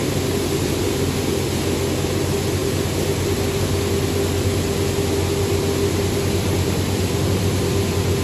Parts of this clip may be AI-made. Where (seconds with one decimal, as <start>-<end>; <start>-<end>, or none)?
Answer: none